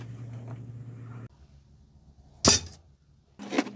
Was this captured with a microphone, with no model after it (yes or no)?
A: yes